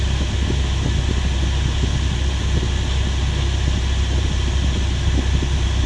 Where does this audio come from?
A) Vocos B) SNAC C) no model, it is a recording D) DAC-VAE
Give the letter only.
C